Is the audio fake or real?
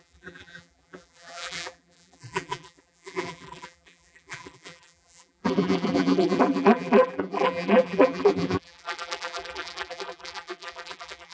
fake